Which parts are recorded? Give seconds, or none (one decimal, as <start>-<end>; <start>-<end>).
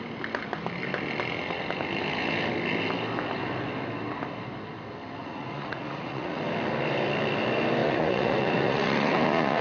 0.0-5.2; 6.4-7.8